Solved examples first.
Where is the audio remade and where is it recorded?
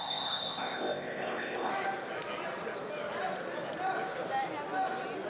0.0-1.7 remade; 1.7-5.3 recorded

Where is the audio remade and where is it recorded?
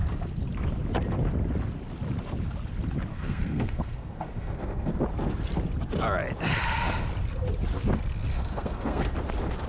0.0-3.1 recorded; 3.1-4.9 remade; 4.9-8.3 recorded; 8.3-9.0 remade; 9.0-9.7 recorded